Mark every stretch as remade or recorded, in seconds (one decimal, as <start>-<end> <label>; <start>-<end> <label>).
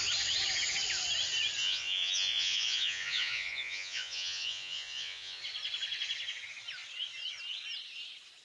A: 0.0-1.6 recorded; 1.6-5.4 remade; 5.4-8.4 recorded